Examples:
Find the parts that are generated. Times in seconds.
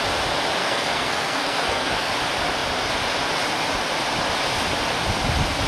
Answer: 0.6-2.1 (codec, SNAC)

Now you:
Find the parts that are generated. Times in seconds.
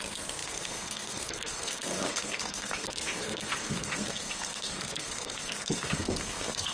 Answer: 0.0-6.7 (codec, SNAC)